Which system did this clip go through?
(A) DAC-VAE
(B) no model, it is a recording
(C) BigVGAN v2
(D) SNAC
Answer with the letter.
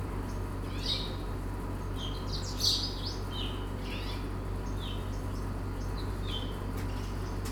B